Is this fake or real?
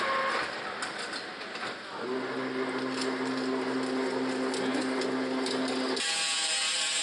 real